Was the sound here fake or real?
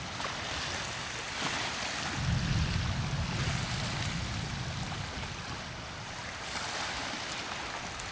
real